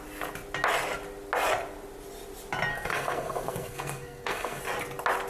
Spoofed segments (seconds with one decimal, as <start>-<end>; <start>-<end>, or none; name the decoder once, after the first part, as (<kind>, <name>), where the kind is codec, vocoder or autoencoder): 2.7-4.6 (codec, SNAC)